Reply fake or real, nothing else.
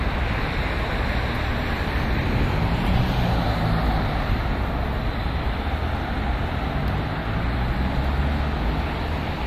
real